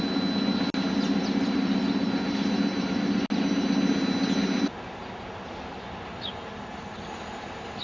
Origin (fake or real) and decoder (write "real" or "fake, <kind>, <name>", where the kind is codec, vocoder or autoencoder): real